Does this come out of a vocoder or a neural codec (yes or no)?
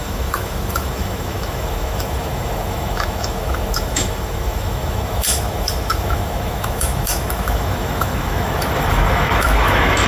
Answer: yes